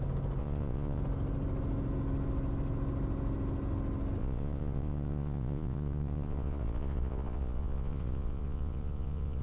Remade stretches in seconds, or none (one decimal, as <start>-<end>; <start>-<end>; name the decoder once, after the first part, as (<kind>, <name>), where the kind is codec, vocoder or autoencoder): 0.4-1.0 (vocoder, Vocos); 4.2-9.4